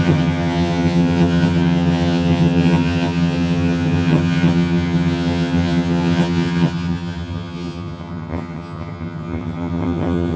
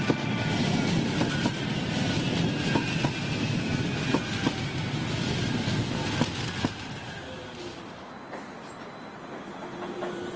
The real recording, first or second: second